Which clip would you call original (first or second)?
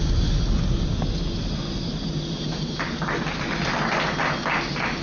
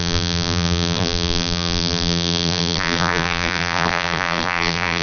first